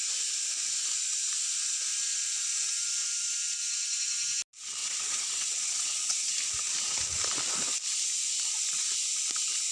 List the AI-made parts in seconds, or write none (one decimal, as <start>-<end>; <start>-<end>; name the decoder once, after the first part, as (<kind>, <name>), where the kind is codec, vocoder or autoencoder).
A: 4.8-6.3 (vocoder, WaveNeXt)